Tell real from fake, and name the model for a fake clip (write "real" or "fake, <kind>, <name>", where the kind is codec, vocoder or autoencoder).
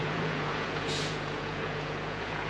fake, vocoder, Vocos